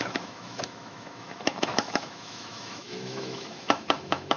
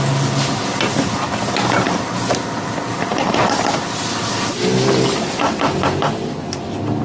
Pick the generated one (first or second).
first